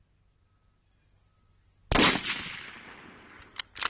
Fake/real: real